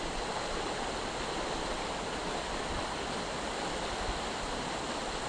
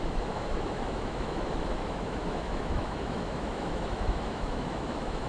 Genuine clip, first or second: first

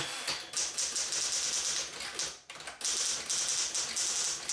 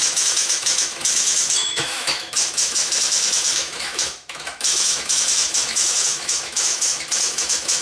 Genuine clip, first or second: first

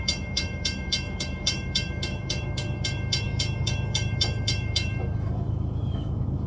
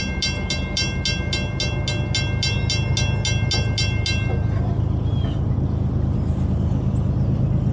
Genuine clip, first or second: second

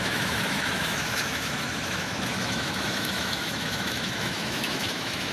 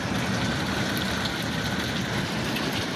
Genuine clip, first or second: second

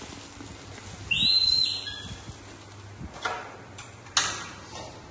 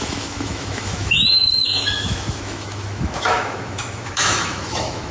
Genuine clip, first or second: first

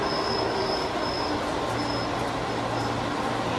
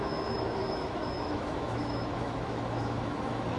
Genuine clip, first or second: first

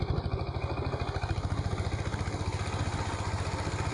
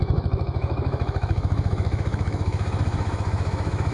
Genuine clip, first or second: first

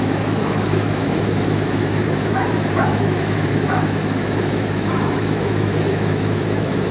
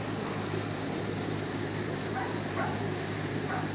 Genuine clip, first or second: second